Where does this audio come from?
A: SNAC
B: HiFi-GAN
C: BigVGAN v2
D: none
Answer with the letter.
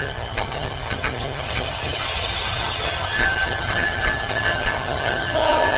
B